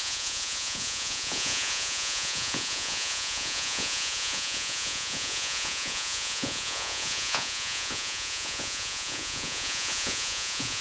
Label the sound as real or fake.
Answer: fake